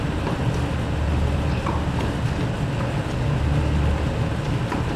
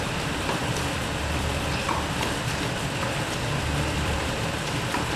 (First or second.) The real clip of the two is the first